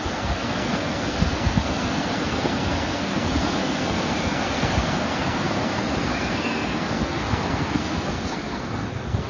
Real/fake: fake